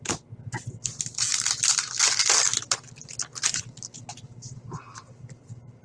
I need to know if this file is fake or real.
real